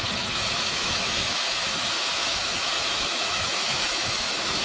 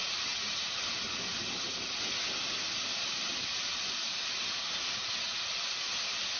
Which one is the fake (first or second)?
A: first